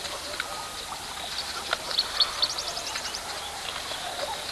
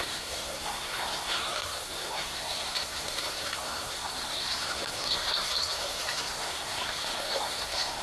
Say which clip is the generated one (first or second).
second